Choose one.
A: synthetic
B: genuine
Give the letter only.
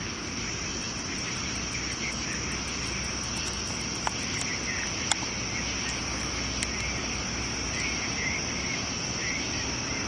B